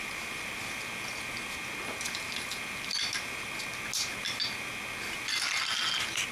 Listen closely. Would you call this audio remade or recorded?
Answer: recorded